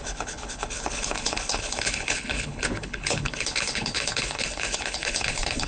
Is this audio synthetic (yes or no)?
yes